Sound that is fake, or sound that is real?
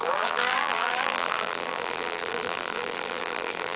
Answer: fake